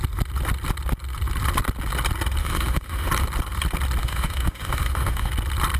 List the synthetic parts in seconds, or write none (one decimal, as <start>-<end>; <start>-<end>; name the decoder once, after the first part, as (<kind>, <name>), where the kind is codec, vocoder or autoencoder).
2.4-3.1 (autoencoder, DAC-VAE); 4.0-5.3

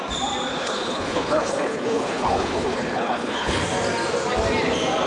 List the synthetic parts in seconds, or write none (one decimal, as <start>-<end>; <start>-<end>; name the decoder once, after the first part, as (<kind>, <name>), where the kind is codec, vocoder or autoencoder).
0.5-3.6 (codec, HILCodec)

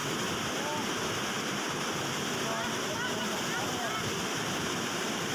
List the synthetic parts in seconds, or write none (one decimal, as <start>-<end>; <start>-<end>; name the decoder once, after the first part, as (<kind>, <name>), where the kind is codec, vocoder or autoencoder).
none

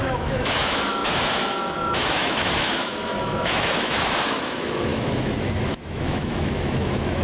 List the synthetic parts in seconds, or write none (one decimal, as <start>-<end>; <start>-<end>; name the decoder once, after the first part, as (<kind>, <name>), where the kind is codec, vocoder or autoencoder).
0.0-7.2 (autoencoder, DAC-VAE)

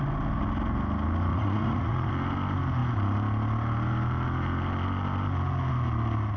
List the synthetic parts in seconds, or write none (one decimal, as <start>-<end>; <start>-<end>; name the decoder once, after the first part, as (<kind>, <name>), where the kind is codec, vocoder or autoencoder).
1.3-2.1 (vocoder, Vocos)

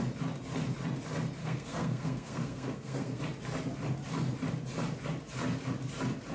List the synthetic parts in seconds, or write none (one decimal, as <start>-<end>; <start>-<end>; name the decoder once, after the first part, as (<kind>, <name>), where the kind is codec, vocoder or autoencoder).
1.4-3.2 (codec, SNAC)

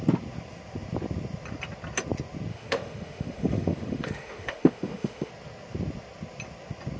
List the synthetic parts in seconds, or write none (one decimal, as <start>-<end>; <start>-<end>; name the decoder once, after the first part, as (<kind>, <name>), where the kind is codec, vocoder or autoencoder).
2.5-5.3 (autoencoder, DAC-VAE)